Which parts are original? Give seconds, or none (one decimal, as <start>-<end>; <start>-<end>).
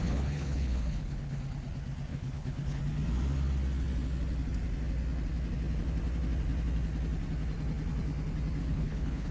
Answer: 1.4-2.1; 2.8-8.6